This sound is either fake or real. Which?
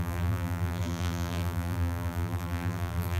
fake